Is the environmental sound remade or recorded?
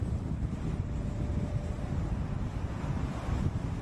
recorded